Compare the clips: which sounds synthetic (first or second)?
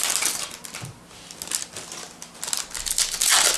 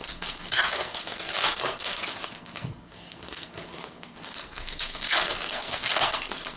second